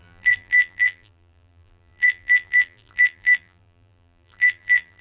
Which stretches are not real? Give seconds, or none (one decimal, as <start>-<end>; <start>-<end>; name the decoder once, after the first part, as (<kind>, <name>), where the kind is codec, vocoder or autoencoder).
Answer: 0.0-5.0 (vocoder, BigVGAN v2)